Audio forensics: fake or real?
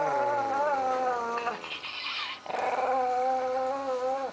real